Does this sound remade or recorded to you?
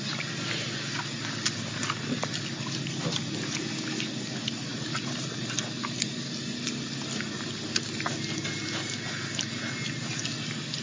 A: recorded